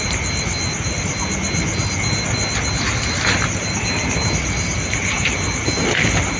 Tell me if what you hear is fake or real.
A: real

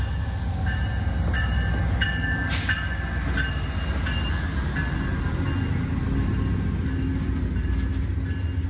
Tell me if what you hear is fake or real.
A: real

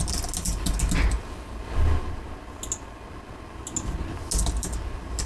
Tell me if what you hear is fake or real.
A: real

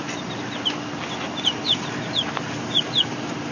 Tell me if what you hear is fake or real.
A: real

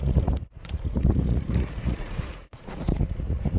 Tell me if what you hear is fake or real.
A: fake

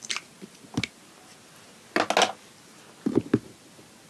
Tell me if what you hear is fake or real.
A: real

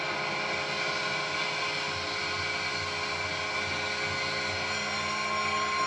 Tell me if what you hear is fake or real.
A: real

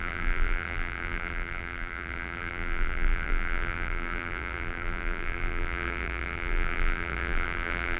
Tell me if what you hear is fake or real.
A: fake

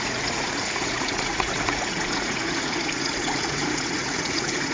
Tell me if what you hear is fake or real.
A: fake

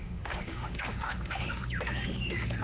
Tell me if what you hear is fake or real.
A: fake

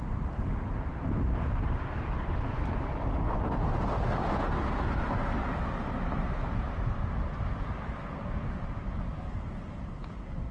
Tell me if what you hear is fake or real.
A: real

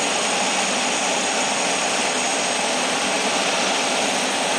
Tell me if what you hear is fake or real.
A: real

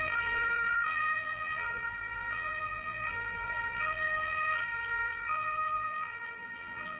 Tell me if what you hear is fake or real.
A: fake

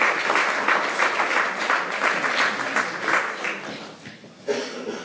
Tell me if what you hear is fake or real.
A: real